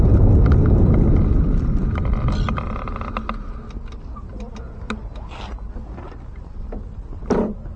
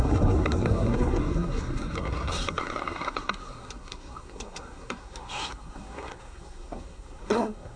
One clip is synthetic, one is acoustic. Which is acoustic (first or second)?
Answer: first